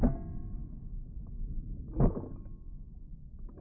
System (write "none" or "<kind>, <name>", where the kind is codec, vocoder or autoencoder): none